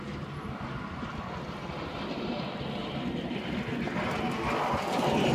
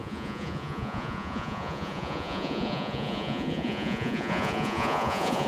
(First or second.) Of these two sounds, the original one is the first